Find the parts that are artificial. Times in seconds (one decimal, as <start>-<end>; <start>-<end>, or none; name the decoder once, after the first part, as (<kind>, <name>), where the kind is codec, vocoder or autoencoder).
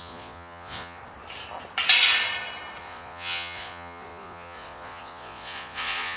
0.0-1.0 (vocoder, Vocos); 2.8-6.2